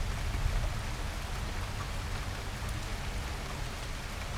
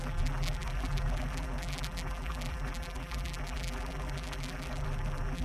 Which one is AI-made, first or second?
second